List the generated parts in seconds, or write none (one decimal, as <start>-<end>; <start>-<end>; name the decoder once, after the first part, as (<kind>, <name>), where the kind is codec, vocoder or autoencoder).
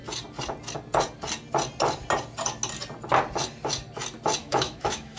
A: 4.4-5.2 (autoencoder, DAC-VAE)